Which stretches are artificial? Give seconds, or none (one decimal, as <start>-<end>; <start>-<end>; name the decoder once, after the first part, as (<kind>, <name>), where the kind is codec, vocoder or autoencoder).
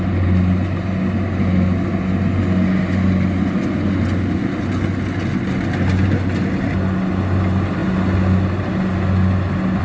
none